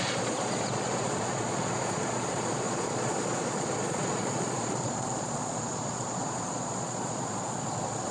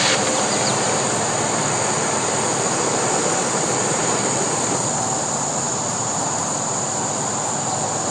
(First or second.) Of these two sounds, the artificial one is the first